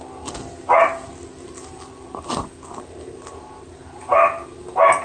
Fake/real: real